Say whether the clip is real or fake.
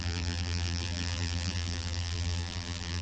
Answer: fake